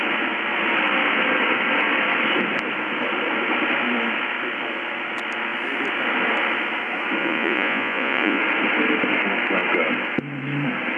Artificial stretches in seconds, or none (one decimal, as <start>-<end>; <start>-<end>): 7.2-8.4